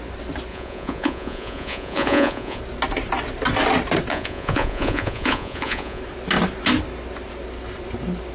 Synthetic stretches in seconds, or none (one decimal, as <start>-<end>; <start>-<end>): 0.5-2.6; 4.1-6.0